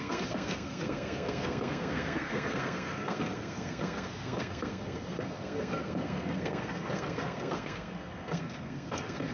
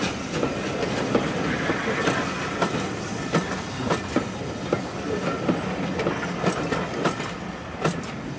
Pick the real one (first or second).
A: second